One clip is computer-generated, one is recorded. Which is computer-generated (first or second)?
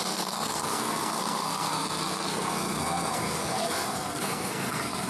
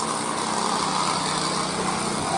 first